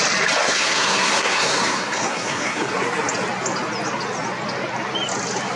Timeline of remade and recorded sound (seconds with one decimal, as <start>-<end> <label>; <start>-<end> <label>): 0.0-0.4 recorded; 0.4-2.7 remade; 2.7-5.6 recorded